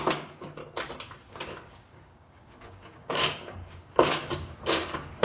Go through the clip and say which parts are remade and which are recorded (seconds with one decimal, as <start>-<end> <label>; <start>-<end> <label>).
0.0-0.6 remade; 0.6-1.3 recorded; 1.3-5.2 remade